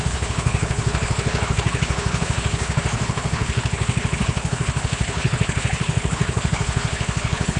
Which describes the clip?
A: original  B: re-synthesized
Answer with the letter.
B